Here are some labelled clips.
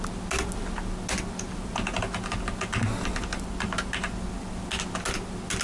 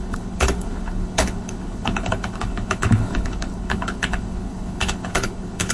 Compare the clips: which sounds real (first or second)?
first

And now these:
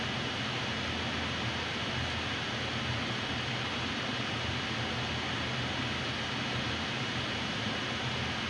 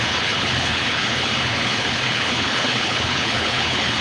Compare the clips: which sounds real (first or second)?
first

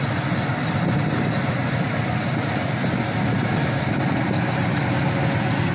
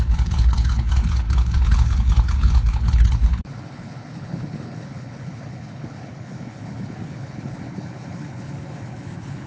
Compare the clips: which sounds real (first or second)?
first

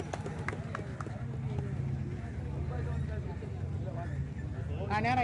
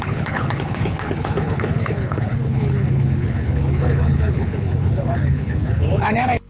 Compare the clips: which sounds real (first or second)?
first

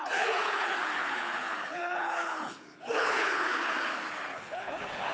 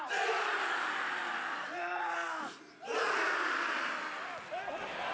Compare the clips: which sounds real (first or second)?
second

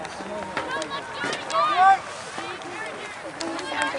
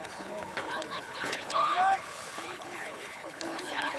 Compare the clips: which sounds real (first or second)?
first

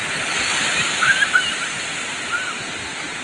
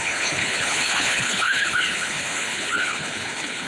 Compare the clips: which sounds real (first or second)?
first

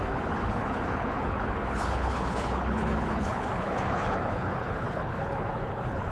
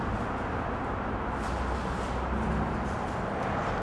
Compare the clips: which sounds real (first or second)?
second